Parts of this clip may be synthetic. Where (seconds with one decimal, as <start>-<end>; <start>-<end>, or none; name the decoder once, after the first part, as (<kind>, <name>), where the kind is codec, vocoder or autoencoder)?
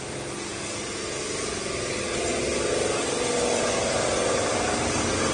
none